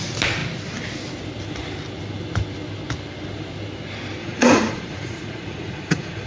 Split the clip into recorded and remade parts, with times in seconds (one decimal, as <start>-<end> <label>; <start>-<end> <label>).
0.0-4.2 recorded; 4.2-6.3 remade